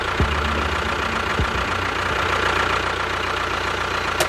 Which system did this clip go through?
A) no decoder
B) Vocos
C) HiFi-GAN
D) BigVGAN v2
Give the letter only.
A